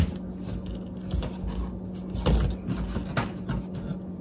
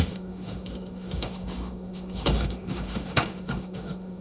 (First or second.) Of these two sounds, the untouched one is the first